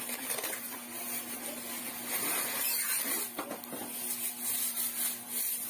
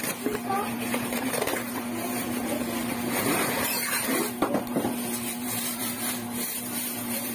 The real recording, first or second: first